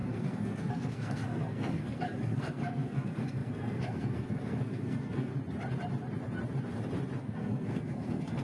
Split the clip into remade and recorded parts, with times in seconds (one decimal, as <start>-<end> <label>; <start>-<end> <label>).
0.0-5.3 remade; 5.3-7.2 recorded; 7.2-8.4 remade